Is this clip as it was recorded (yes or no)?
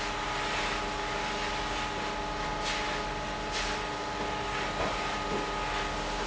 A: yes